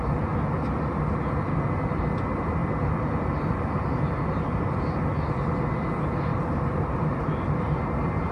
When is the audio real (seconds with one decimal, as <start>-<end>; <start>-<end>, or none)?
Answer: 0.0-6.3